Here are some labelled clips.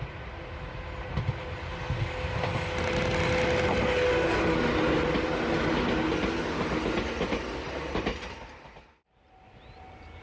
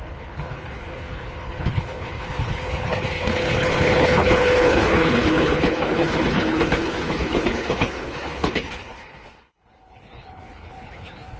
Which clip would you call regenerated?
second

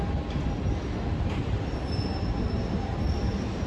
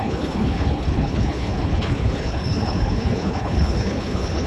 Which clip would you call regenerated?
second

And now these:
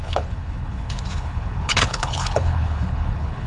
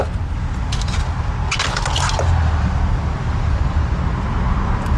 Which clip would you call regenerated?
first